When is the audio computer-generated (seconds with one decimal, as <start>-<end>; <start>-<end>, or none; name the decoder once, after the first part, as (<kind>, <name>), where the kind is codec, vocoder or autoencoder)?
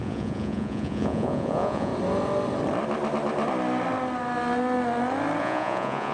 0.0-1.9 (vocoder, Vocos); 5.4-6.1